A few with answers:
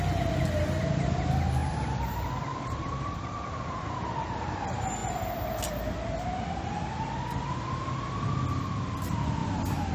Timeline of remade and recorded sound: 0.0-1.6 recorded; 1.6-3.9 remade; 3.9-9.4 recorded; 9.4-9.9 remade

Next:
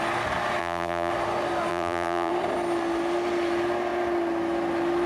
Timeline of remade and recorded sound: 0.0-0.6 recorded; 0.6-1.1 remade; 1.1-1.7 recorded; 1.7-2.3 remade; 2.3-5.1 recorded

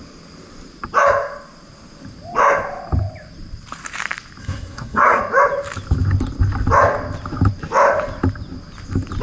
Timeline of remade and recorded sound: 0.0-4.4 recorded; 4.4-5.2 remade; 5.2-9.2 recorded

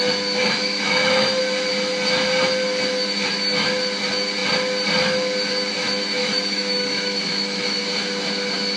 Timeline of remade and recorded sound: 0.0-0.4 recorded; 0.4-1.4 remade; 1.4-6.2 recorded; 6.2-7.8 remade; 7.8-8.8 recorded

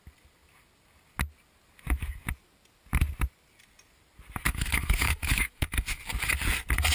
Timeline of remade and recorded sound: 0.0-4.5 recorded; 4.5-6.0 remade; 6.0-6.9 recorded

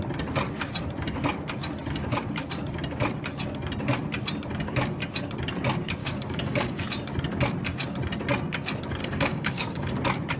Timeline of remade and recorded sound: 0.0-6.0 recorded; 6.0-6.8 remade; 6.8-9.0 recorded; 9.0-9.9 remade; 9.9-10.4 recorded

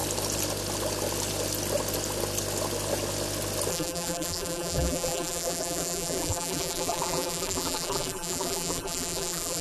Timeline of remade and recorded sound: 0.0-3.7 recorded; 3.7-9.6 remade